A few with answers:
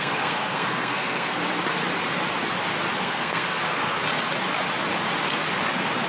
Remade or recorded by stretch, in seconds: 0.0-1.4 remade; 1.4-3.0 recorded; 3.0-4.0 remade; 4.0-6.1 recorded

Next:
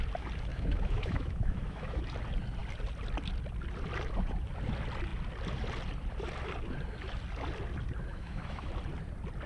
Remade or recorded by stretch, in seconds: 0.0-0.5 recorded; 0.5-2.0 remade; 2.0-8.1 recorded; 8.1-8.7 remade; 8.7-9.5 recorded